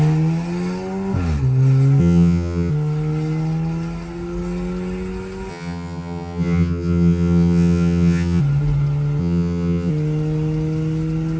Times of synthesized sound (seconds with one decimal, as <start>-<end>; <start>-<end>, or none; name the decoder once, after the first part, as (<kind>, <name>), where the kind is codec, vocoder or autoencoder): 2.0-2.7 (vocoder, HiFi-GAN); 5.5-8.4; 9.2-9.9